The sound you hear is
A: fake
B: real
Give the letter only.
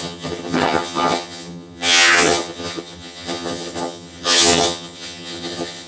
A